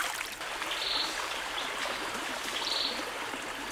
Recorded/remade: recorded